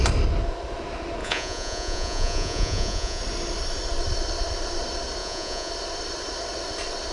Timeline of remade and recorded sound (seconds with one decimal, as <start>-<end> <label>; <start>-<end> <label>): 0.0-1.2 recorded; 1.2-3.2 remade; 3.2-5.2 recorded; 5.2-5.7 remade; 5.7-7.1 recorded